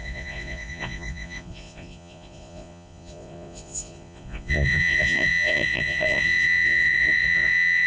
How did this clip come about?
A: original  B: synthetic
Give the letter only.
B